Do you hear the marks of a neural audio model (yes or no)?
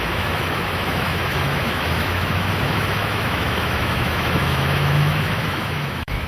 yes